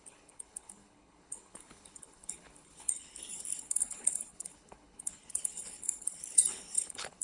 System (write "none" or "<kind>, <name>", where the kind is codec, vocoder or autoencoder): codec, HILCodec